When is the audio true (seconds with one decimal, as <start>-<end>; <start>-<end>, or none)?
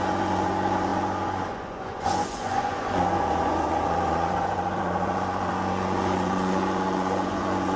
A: none